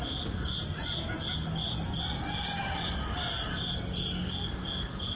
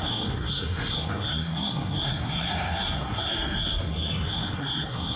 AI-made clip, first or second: second